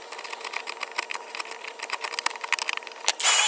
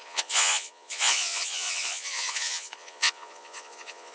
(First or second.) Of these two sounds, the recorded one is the first